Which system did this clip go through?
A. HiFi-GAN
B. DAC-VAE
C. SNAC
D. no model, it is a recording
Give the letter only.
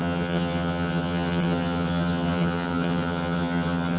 A